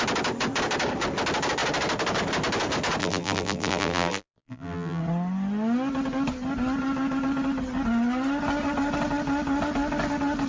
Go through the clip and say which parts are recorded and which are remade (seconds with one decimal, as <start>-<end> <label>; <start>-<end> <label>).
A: 0.0-3.0 recorded; 3.0-5.0 remade; 5.0-10.5 recorded